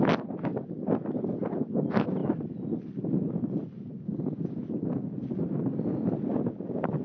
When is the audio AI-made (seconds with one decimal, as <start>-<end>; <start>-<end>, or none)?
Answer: none